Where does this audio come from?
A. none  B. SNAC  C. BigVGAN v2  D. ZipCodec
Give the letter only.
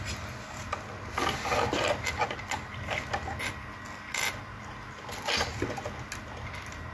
A